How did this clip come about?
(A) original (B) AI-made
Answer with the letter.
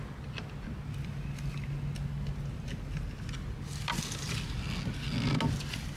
A